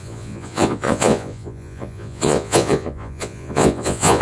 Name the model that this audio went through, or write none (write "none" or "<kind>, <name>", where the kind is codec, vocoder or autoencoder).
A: vocoder, Vocos